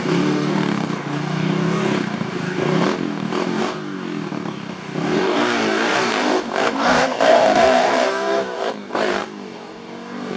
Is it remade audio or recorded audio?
remade